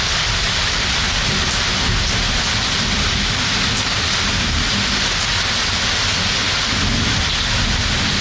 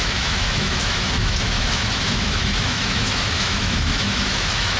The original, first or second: first